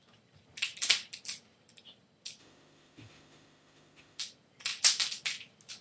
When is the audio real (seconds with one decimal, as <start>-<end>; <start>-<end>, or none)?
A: 0.0-2.4; 4.2-5.8